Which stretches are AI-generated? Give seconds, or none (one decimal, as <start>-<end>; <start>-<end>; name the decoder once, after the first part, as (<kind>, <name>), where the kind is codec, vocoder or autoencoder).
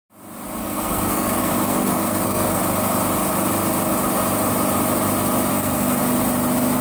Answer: 0.6-2.6 (codec, SNAC); 5.5-6.0